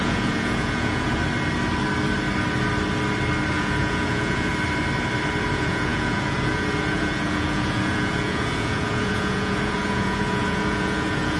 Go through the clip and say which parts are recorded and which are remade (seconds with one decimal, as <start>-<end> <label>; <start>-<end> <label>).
0.0-1.2 remade; 1.2-3.5 recorded; 3.5-4.5 remade; 4.5-5.5 recorded; 5.5-11.4 remade